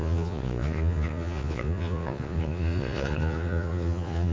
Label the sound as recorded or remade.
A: remade